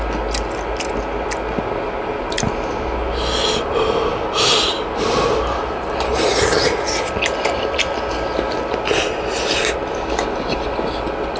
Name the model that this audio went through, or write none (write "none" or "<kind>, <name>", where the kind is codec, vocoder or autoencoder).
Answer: none